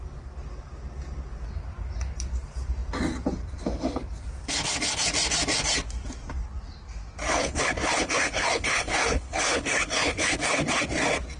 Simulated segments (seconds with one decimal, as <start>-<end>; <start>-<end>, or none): 7.4-10.8